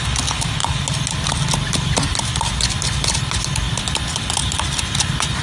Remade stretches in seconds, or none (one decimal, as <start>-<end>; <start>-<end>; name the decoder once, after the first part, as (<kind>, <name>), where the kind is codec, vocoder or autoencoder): none